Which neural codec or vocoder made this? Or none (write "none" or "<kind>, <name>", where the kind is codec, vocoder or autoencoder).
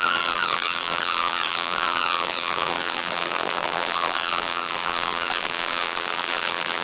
vocoder, BigVGAN v2